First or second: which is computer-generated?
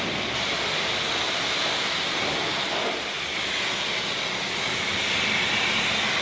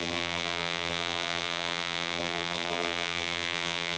second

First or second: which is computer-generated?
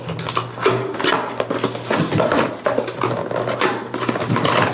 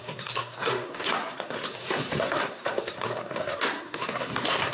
second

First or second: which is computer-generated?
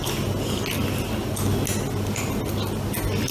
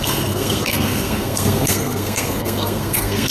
second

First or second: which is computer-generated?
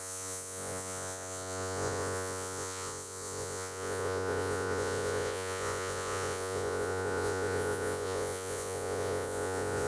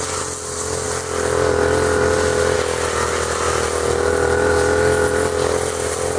first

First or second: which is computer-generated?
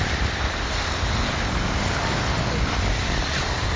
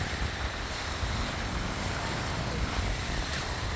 second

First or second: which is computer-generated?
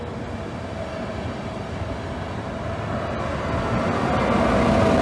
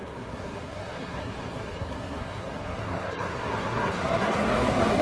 second